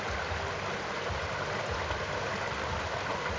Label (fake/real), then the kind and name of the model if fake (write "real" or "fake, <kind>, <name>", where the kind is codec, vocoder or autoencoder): real